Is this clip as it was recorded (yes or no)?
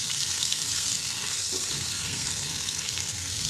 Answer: no